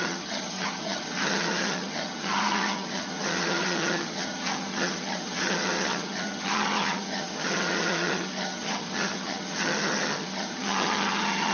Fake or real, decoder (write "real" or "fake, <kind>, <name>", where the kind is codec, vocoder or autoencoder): fake, vocoder, HiFi-GAN